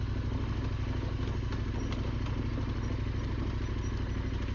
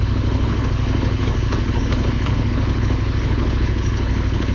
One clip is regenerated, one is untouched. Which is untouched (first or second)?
first